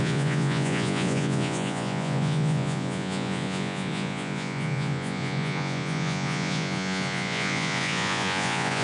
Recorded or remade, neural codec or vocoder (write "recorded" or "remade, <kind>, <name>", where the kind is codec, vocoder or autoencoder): remade, vocoder, Vocos